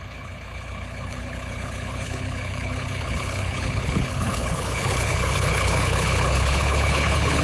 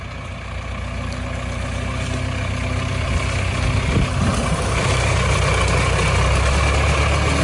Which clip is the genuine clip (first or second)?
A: second